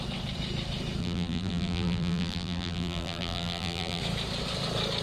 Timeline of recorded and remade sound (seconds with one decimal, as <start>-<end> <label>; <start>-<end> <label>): 0.0-1.0 recorded; 1.0-4.0 remade; 4.0-5.0 recorded